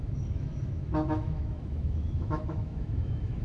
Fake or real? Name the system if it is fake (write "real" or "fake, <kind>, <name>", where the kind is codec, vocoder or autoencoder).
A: fake, autoencoder, DAC-VAE